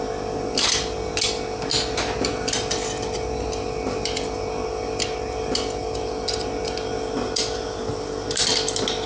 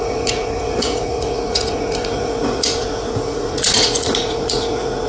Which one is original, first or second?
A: first